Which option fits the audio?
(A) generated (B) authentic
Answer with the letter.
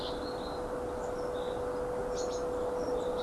B